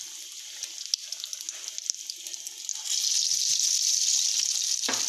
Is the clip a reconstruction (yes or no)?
no